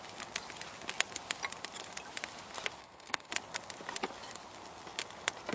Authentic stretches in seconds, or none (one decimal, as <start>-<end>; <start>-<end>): 0.0-2.8; 3.3-5.5